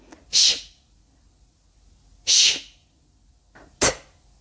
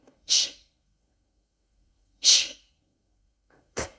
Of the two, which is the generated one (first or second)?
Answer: second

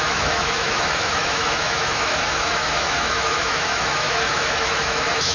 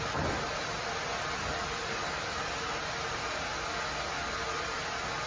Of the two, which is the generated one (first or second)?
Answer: first